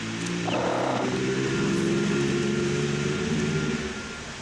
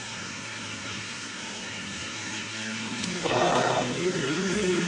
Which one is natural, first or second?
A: first